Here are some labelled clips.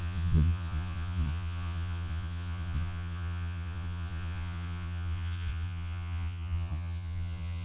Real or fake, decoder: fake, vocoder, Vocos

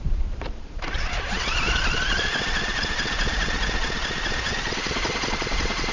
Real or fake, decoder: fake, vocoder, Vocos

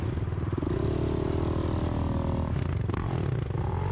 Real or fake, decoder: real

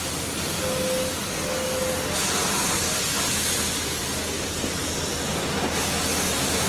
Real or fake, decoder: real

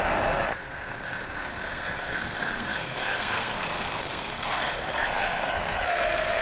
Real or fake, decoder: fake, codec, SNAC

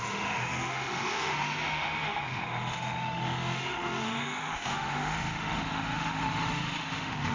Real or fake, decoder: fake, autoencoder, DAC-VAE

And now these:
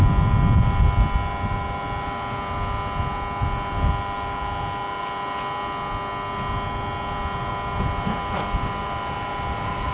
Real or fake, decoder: real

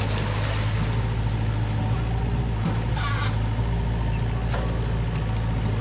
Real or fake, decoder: real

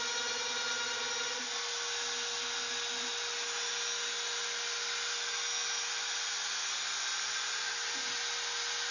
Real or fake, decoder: real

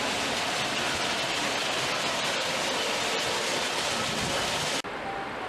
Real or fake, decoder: real